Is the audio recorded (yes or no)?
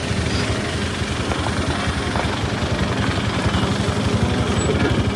yes